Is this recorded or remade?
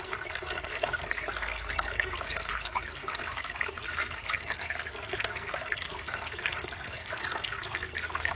remade